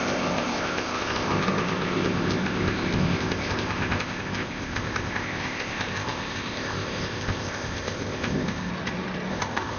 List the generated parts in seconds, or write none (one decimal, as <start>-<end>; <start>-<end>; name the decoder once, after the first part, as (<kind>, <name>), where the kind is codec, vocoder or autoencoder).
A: 0.0-8.7 (codec, ZipCodec); 9.3-9.8